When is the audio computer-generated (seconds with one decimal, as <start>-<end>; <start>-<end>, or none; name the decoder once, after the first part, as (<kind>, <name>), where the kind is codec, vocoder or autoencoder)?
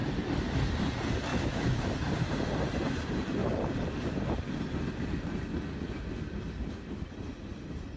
1.3-1.9 (autoencoder, DAC-VAE)